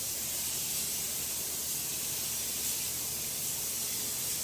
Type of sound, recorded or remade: recorded